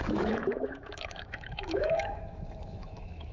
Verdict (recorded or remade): remade